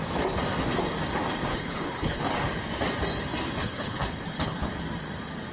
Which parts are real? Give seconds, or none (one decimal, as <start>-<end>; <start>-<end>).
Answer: 0.0-1.5; 2.2-3.6; 4.7-5.5